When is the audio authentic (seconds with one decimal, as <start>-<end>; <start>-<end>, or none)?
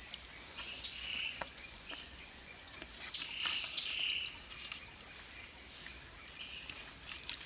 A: 0.0-0.5; 2.9-7.5